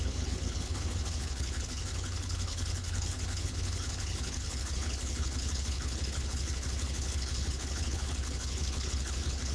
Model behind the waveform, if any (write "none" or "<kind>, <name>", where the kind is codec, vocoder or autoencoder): codec, HILCodec